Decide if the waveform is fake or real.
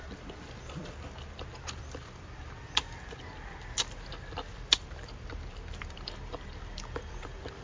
fake